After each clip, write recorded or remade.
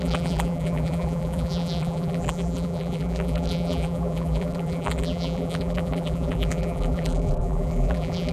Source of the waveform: remade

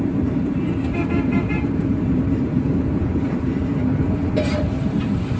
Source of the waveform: remade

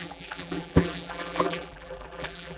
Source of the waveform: remade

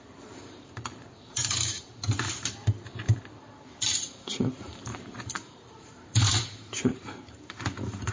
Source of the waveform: remade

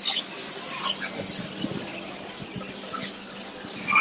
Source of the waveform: recorded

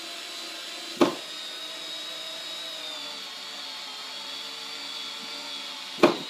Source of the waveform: recorded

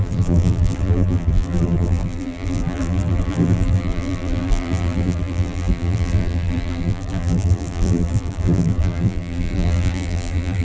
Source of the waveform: remade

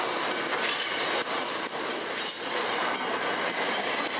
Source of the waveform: remade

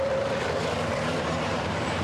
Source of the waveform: remade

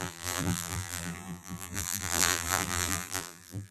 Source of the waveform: remade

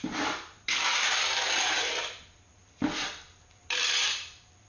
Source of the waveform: remade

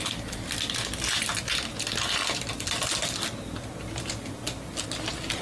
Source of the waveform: recorded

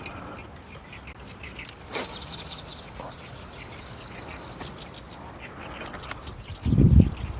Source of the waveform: recorded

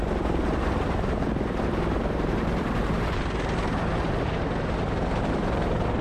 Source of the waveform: remade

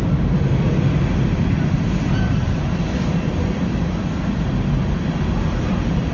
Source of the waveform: recorded